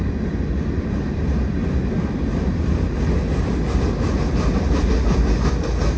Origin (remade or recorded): recorded